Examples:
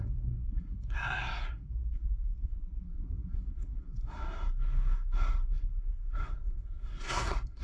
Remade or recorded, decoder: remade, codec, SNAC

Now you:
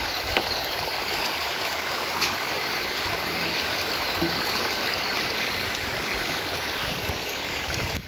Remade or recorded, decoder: remade, codec, DAC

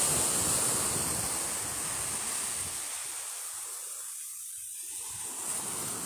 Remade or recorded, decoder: recorded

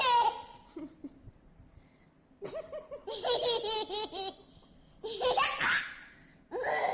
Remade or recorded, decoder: recorded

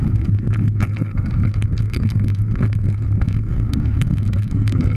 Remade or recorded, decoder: remade, codec, SNAC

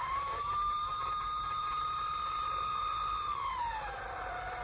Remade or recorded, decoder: remade, vocoder, BigVGAN v2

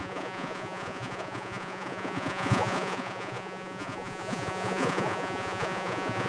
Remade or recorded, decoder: remade, vocoder, Vocos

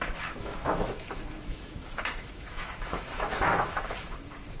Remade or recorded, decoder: remade, autoencoder, DAC-VAE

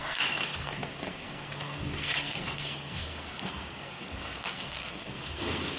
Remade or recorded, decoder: remade, codec, SNAC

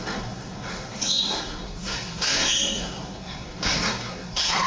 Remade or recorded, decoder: remade, codec, SNAC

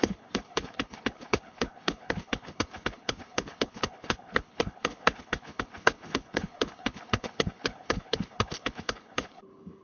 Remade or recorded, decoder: remade, codec, HILCodec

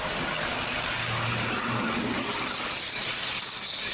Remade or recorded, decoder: recorded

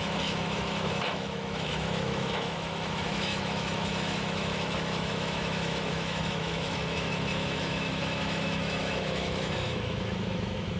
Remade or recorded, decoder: remade, autoencoder, DAC-VAE